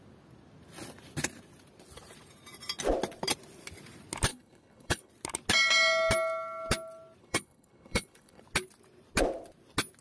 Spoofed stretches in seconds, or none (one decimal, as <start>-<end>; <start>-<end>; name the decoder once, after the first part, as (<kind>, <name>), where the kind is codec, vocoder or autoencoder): 4.3-5.1 (codec, HILCodec); 7.2-8.4